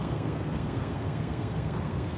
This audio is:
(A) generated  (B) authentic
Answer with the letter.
A